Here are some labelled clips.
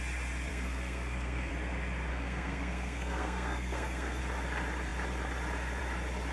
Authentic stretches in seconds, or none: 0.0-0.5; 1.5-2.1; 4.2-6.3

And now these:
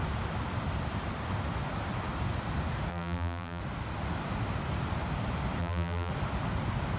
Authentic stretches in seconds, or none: 0.0-2.9; 3.6-5.6; 6.1-7.0

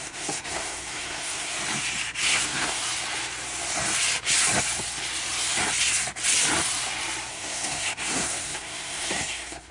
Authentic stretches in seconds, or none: 1.5-2.2; 2.8-7.3

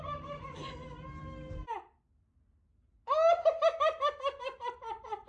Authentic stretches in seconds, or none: 1.2-4.4

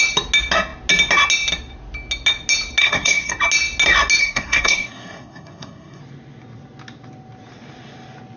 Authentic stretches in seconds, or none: 0.0-2.8; 3.3-4.2; 6.0-8.4

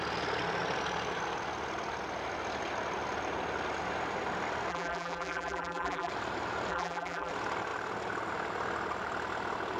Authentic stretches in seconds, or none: 0.0-4.7; 6.1-6.7; 7.3-9.8